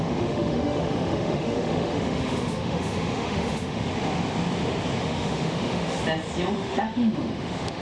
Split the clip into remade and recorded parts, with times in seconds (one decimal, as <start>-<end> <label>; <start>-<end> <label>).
0.0-3.9 remade; 3.9-5.0 recorded; 5.0-6.0 remade; 6.0-6.5 recorded; 6.5-7.8 remade